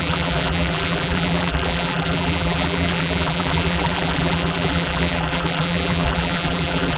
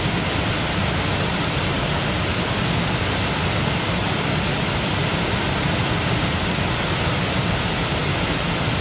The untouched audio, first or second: second